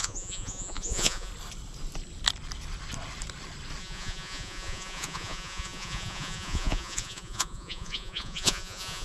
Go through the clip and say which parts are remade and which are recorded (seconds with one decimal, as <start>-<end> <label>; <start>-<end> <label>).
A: 0.0-1.3 remade; 1.3-3.8 recorded; 3.8-9.0 remade